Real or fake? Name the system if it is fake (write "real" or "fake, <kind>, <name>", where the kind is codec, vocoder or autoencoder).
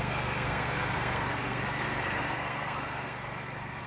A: fake, codec, SNAC